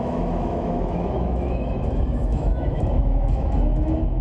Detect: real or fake fake